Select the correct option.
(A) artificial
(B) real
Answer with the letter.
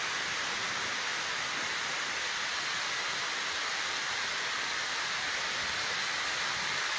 B